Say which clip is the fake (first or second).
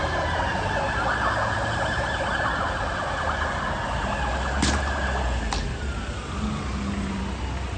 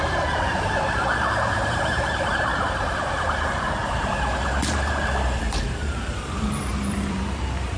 second